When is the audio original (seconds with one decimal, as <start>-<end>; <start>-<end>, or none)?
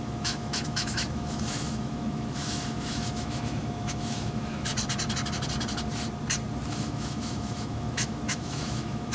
4.7-6.7